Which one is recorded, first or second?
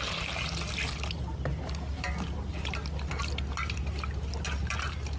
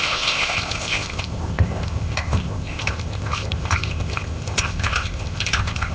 first